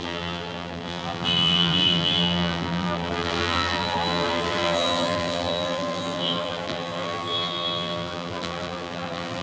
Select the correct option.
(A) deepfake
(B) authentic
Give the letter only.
A